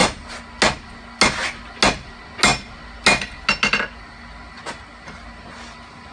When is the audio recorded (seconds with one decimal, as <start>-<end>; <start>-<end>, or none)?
0.0-6.1

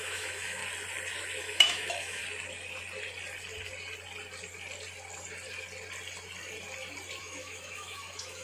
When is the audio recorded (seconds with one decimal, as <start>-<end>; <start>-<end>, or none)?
0.6-1.4; 2.2-7.2

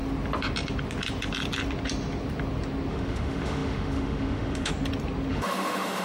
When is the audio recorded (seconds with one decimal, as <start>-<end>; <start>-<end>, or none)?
0.0-2.9; 4.7-5.3

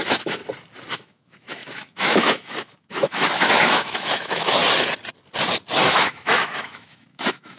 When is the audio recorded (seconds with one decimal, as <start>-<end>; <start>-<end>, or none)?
0.4-0.9; 4.6-5.9

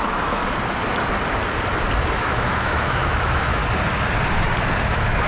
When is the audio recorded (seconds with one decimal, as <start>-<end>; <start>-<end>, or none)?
0.4-2.1; 3.6-4.8

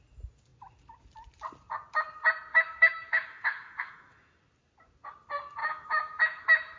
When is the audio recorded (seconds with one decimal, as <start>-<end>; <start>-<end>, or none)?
0.0-2.5; 4.4-5.6

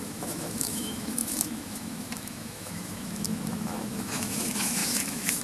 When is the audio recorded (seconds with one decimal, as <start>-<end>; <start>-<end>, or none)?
none